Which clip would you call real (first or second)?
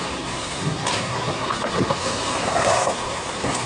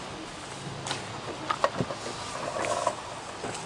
second